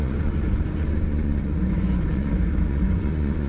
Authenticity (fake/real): fake